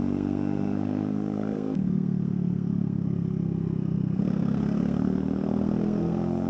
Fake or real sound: fake